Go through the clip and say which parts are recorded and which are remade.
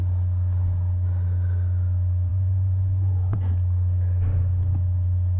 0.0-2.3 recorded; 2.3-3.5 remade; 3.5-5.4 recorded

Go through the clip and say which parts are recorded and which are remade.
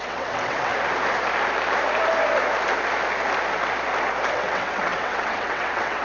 0.0-0.7 remade; 0.7-4.3 recorded; 4.3-6.0 remade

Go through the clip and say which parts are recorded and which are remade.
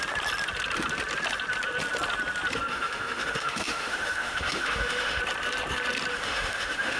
0.0-2.7 recorded; 2.7-5.2 remade; 5.2-6.1 recorded; 6.1-7.0 remade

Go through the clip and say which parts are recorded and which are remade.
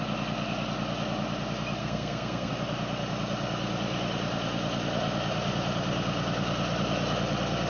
0.0-1.8 recorded; 1.8-2.5 remade; 2.5-7.7 recorded